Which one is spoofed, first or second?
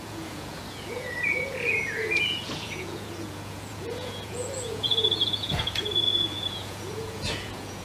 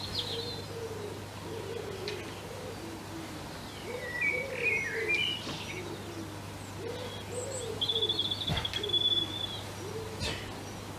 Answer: first